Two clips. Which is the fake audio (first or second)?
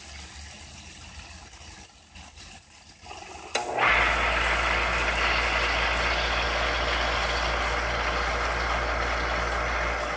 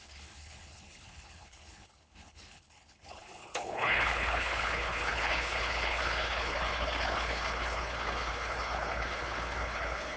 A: second